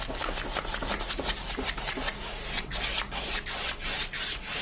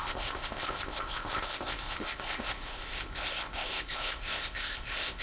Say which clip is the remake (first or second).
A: second